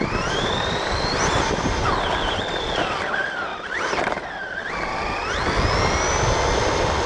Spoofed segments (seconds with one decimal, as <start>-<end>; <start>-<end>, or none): 0.0-2.2; 3.1-3.5; 4.0-4.6